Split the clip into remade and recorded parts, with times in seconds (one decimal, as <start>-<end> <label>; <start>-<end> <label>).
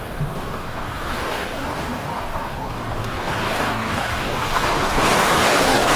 0.0-6.0 remade